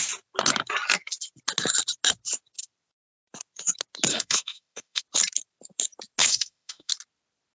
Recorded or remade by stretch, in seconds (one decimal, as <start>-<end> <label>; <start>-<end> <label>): 0.0-4.1 recorded; 4.1-5.0 remade; 5.0-6.2 recorded; 6.2-6.9 remade; 6.9-7.6 recorded